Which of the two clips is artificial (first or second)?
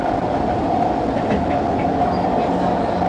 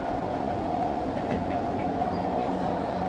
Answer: second